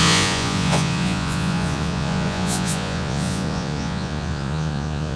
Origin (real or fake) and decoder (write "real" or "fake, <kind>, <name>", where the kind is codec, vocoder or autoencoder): fake, vocoder, Vocos